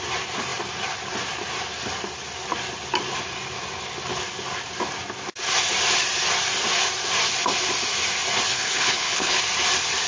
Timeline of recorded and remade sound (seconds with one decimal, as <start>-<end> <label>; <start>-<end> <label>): 0.0-8.5 recorded; 8.5-9.4 remade; 9.4-10.1 recorded